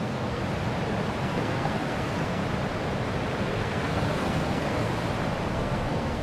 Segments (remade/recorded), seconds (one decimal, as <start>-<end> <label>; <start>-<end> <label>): 0.0-0.4 remade; 0.4-1.2 recorded; 1.2-2.4 remade; 2.4-3.4 recorded; 3.4-4.9 remade; 4.9-5.5 recorded; 5.5-6.2 remade

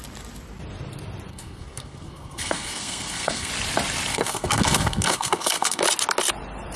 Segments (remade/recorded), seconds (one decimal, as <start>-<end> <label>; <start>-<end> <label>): 0.0-1.3 recorded; 1.3-3.5 remade; 3.5-4.1 recorded; 4.1-5.8 remade; 5.8-6.8 recorded

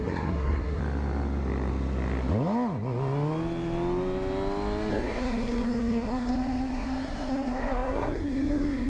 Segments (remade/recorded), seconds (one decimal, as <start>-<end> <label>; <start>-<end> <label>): 0.0-0.8 remade; 0.8-4.9 recorded; 4.9-8.9 remade

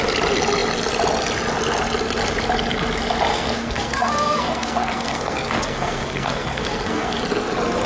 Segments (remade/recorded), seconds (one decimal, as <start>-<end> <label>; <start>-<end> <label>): 0.0-3.3 recorded; 3.3-7.2 remade; 7.2-7.9 recorded

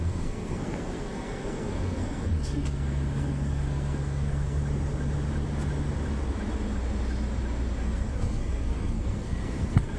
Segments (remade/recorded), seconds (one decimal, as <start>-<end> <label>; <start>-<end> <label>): 0.0-4.6 remade; 4.6-7.8 recorded; 7.8-10.0 remade